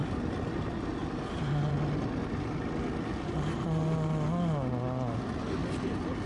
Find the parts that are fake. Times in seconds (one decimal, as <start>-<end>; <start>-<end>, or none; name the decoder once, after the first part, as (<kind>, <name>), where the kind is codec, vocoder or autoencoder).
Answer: none